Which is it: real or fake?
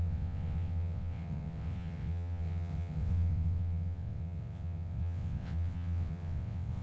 fake